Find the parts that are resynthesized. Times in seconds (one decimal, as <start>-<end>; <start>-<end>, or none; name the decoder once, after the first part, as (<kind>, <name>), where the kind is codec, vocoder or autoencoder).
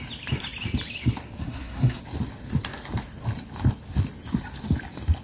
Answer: 1.4-2.0 (codec, SNAC)